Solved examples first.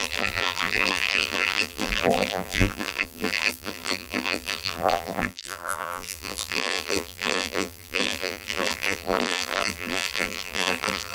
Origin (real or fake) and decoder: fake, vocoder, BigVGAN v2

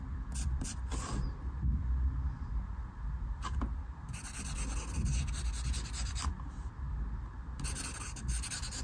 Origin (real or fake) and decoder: real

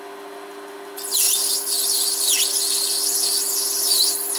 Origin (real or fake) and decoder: real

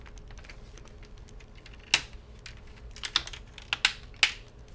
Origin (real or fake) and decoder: real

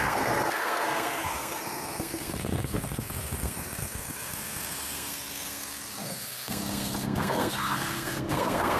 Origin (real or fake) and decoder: fake, codec, SNAC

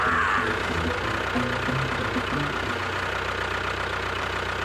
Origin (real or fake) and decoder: real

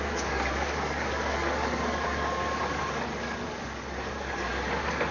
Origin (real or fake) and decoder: fake, codec, DAC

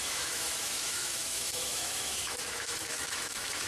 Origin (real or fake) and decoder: fake, autoencoder, DAC-VAE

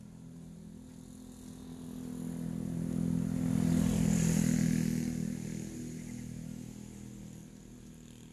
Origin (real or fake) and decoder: real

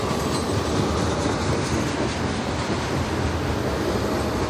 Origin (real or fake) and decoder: real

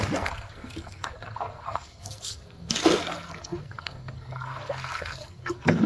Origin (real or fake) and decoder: fake, codec, SNAC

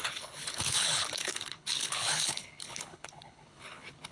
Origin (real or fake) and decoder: fake, codec, HILCodec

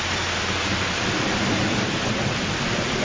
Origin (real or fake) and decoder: fake, vocoder, BigVGAN v2